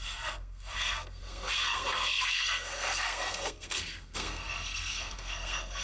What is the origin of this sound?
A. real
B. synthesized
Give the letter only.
B